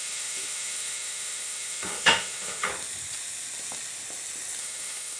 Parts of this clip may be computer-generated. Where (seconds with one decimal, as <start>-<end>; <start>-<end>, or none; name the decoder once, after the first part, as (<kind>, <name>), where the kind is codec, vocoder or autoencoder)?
0.0-2.7 (autoencoder, DAC-VAE); 4.6-5.2